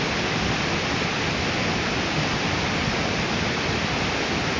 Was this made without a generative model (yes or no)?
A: yes